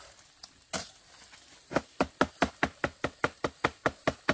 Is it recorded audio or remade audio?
recorded